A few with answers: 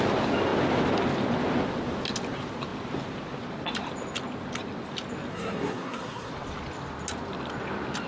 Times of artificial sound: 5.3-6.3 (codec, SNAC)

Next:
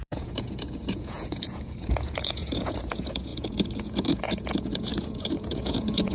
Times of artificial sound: 0.0-6.1 (vocoder, Vocos)